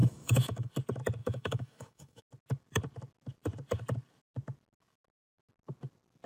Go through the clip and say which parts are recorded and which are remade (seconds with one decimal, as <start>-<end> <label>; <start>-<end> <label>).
0.0-0.7 remade; 0.7-1.2 recorded; 1.2-2.2 remade; 2.2-6.3 recorded